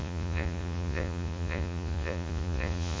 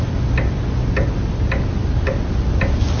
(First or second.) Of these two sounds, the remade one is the first